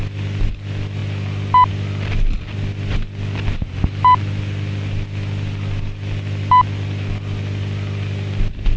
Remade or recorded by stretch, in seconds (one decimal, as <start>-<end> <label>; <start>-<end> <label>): 0.0-8.8 recorded